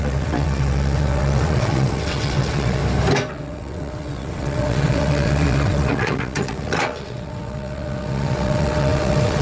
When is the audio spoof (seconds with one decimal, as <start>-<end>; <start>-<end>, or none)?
0.0-2.8; 3.3-9.4